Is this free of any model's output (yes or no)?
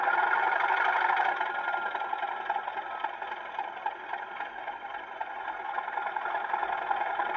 yes